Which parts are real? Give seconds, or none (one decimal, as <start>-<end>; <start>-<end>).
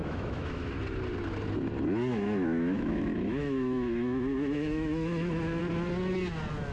0.7-2.1; 5.6-6.7